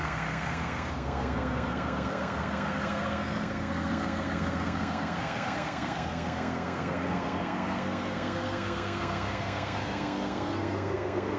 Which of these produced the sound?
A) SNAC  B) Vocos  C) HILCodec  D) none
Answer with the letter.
A